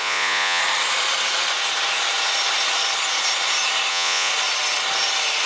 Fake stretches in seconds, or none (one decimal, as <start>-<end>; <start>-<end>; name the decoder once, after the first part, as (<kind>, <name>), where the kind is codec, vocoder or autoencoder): 0.0-0.6 (vocoder, Vocos); 3.9-4.3